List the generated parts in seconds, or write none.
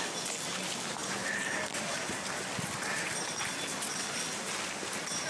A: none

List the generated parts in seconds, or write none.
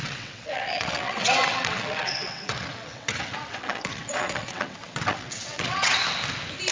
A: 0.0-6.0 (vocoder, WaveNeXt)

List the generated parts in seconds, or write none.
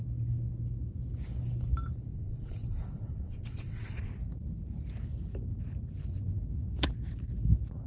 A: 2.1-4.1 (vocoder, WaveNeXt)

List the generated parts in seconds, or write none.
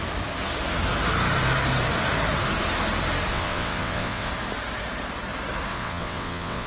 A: 3.3-4.3 (vocoder, WaveNeXt); 5.7-6.7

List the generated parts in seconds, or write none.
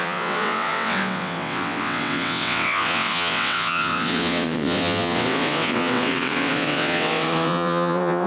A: 0.0-8.3 (vocoder, WaveNeXt)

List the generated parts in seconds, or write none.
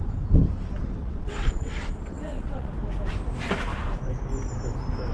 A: 1.0-2.7 (vocoder, WaveNeXt)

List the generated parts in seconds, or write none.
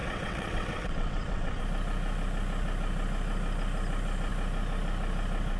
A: 0.0-1.6 (vocoder, WaveNeXt)